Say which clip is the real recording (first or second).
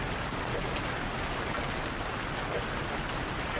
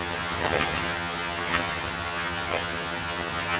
first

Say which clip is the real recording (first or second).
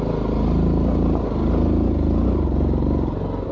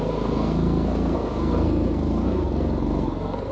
first